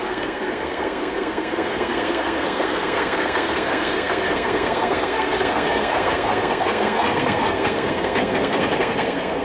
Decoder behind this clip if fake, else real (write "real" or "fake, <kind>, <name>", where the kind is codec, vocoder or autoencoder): fake, codec, SNAC